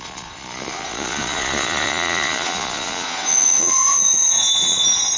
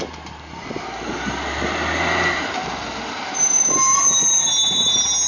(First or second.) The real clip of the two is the second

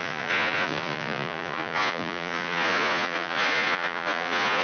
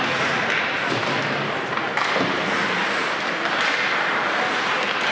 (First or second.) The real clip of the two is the second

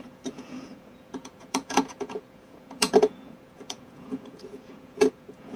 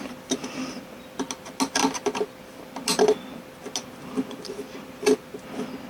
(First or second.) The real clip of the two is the second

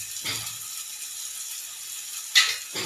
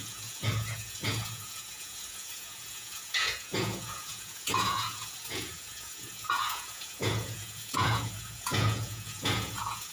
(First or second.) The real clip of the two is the first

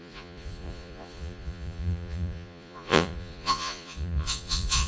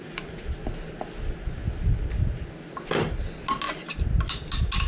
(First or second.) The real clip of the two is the second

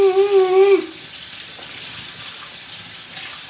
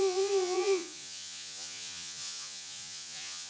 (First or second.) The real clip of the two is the first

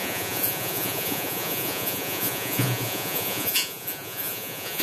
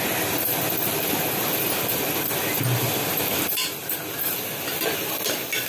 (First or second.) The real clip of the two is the second